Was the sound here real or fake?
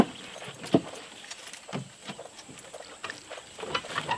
real